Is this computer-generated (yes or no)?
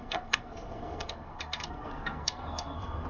yes